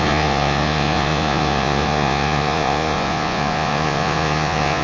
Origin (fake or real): fake